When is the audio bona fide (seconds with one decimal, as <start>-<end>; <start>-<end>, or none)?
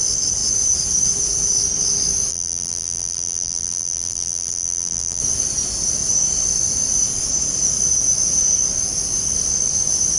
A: 0.0-2.3; 5.2-10.2